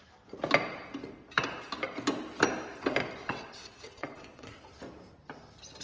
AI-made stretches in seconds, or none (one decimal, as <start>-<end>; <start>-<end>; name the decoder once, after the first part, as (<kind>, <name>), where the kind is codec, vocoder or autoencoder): 3.2-4.7 (vocoder, WaveNeXt)